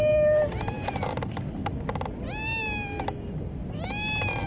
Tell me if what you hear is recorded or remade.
recorded